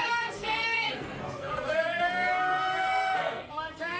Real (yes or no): no